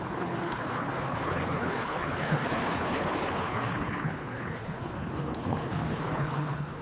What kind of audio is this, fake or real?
fake